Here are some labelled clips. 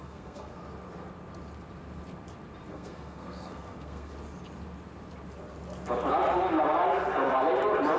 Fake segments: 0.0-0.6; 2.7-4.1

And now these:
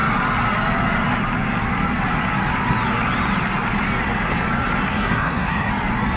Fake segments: 4.9-5.7

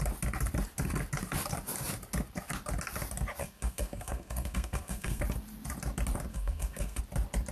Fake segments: 3.4-5.2; 6.3-7.0

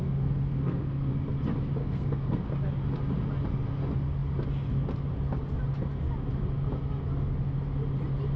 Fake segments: 0.0-1.1; 1.8-2.4